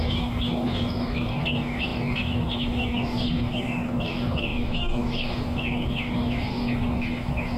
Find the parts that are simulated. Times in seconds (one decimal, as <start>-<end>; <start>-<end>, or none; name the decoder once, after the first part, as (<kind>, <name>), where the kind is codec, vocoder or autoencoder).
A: 0.0-7.6 (codec, DAC)